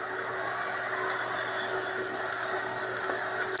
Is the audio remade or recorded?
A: recorded